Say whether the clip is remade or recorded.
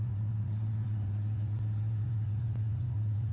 remade